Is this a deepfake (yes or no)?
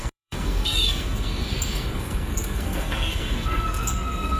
yes